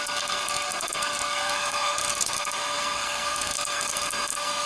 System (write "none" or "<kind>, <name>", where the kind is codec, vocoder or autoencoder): codec, SNAC